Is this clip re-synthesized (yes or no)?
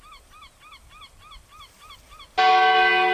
no